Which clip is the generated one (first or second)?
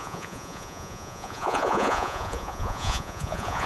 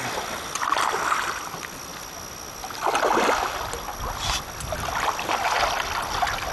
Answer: first